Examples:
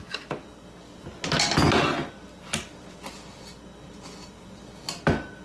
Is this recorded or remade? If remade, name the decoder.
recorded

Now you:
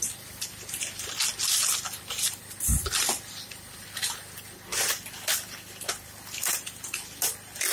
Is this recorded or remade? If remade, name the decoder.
recorded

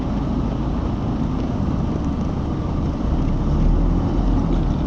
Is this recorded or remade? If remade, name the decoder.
recorded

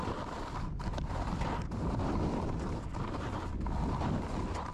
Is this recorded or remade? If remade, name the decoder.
recorded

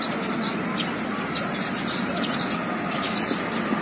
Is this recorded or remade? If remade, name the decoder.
recorded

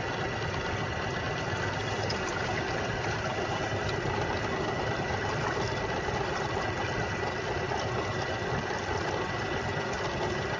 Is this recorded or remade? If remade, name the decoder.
recorded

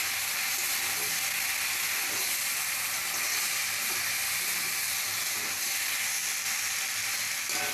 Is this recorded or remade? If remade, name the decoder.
recorded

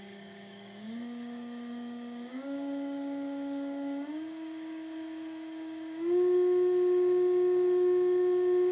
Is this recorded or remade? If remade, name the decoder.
remade, codec, DAC